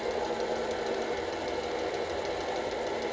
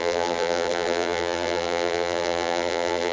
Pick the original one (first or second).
first